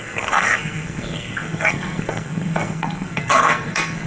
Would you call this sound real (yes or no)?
no